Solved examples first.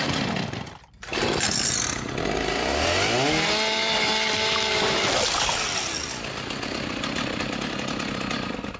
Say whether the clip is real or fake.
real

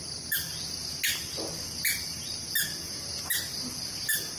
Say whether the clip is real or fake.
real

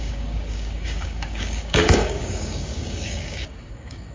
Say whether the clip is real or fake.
fake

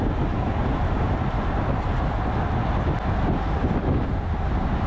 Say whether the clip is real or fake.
real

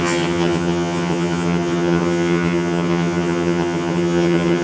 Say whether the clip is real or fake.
fake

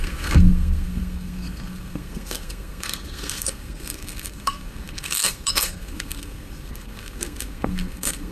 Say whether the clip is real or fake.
fake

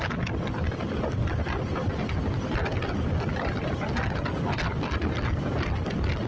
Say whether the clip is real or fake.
real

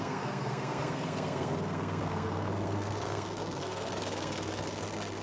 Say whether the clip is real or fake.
fake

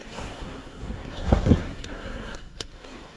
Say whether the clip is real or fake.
fake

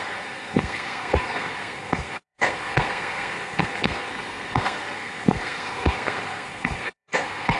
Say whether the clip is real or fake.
fake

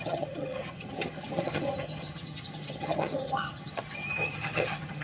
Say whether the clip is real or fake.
fake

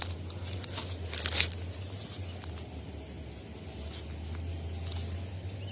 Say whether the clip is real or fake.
real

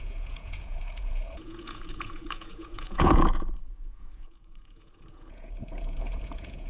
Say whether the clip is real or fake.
fake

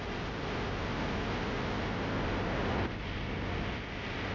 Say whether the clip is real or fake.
real